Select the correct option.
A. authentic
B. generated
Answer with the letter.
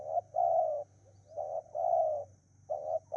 A